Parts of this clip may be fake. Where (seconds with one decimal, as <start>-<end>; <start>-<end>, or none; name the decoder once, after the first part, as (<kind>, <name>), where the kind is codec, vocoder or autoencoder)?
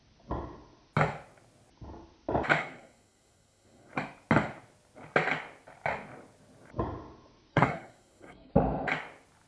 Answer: 2.6-3.9 (codec, SNAC); 7.5-8.5